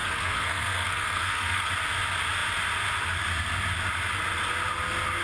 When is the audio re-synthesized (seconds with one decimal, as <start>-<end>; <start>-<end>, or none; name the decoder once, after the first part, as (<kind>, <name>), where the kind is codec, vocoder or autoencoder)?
0.0-1.7 (codec, SNAC)